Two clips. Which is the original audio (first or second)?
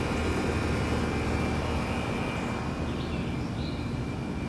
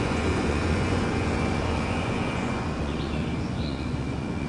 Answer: first